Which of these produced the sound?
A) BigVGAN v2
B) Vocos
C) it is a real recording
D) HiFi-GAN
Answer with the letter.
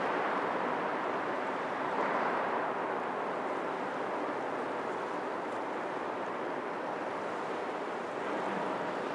C